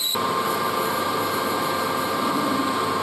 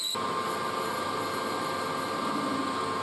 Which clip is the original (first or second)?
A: second